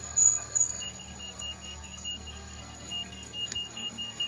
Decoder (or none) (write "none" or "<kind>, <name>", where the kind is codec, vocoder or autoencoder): codec, SNAC